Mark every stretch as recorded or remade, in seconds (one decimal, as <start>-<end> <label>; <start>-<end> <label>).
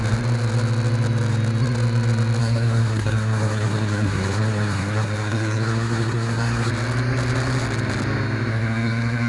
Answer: 0.0-2.4 recorded; 2.4-6.7 remade; 6.7-8.5 recorded; 8.5-9.3 remade